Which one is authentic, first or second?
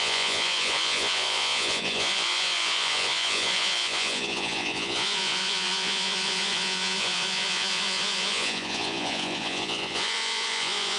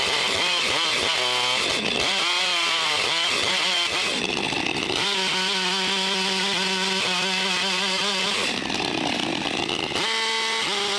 second